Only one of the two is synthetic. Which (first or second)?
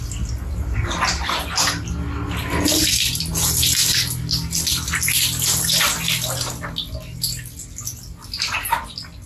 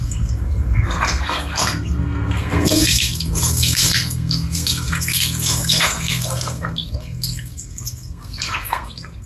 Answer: second